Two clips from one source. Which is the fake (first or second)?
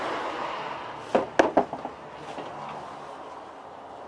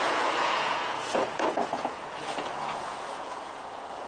second